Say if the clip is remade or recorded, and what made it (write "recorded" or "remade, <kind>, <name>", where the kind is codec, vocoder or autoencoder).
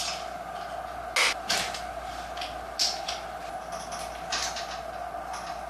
recorded